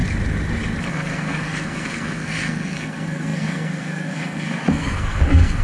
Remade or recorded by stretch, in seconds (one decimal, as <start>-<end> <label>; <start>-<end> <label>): 0.0-0.9 recorded; 0.9-5.6 remade